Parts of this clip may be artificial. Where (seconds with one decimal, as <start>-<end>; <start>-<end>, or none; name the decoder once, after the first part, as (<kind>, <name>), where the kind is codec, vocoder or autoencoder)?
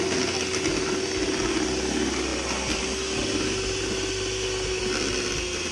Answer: none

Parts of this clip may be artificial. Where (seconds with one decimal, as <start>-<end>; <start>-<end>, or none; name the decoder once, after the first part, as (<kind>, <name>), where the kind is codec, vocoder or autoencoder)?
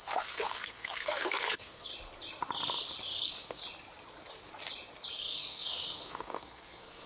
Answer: 0.0-1.9 (codec, SNAC); 3.2-3.6; 5.1-7.1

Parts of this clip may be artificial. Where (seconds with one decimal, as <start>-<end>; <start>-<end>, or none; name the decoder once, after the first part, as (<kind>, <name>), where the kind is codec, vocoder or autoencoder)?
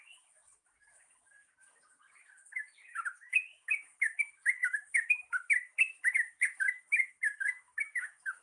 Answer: 0.0-8.4 (autoencoder, DAC-VAE)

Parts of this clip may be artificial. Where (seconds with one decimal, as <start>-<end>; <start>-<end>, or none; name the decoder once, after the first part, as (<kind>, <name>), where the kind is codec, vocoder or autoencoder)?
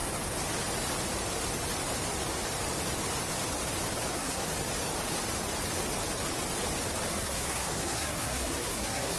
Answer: 4.1-4.5 (codec, SNAC); 7.1-9.2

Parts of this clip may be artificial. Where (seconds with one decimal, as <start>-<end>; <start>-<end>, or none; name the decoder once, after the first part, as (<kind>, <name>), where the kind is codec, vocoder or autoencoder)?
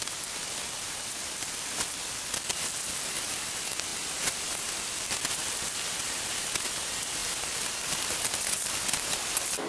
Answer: none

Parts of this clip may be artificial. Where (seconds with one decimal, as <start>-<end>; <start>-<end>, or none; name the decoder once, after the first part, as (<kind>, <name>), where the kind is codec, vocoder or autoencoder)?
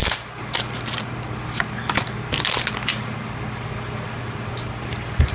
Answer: none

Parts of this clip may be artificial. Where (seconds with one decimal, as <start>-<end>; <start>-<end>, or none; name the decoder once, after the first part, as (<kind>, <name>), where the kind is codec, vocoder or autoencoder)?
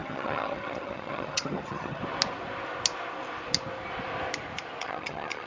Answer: 0.0-2.0 (vocoder, HiFi-GAN); 4.8-5.5